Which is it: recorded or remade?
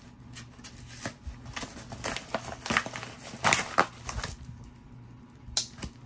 recorded